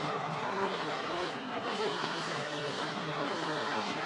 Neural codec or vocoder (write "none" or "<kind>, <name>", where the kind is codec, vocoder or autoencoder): codec, SNAC